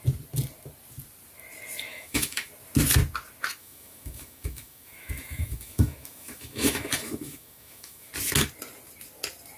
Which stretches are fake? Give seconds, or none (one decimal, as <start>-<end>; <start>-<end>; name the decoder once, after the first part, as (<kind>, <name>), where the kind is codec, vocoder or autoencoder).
1.9-2.5 (autoencoder, DAC-VAE); 3.6-8.1